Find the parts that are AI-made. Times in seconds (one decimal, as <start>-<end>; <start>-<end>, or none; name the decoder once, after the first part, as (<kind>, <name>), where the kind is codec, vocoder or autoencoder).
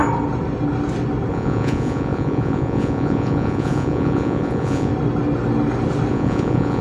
1.3-4.9 (vocoder, Vocos); 6.1-6.8